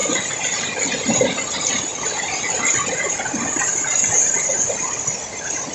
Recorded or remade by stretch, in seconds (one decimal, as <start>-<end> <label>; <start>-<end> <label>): 0.0-5.7 recorded

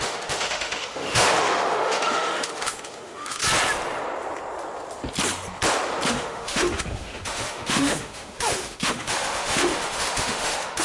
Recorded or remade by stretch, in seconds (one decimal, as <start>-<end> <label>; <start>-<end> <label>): 0.0-3.4 remade; 3.4-6.1 recorded; 6.1-10.8 remade

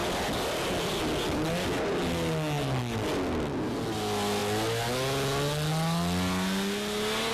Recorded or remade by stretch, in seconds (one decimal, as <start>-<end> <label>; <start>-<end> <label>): 0.0-7.3 recorded

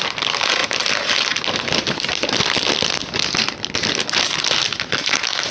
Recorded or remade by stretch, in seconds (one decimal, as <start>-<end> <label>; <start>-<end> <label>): 0.0-5.5 recorded

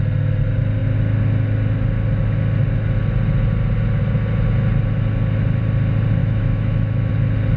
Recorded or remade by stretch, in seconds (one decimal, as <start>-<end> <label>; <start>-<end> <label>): 0.0-6.2 recorded; 6.2-7.1 remade; 7.1-7.6 recorded